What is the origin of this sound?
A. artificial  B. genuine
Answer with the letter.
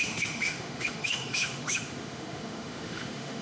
A